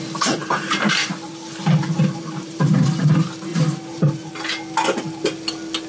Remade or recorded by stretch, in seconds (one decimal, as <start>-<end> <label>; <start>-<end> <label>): 0.0-0.4 recorded; 0.4-2.8 remade; 2.8-3.5 recorded; 3.5-4.3 remade; 4.3-5.9 recorded